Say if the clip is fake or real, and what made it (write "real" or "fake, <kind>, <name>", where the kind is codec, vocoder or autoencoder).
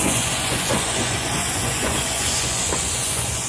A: fake, vocoder, Vocos